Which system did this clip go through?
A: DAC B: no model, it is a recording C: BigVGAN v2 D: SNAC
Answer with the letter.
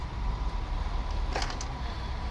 B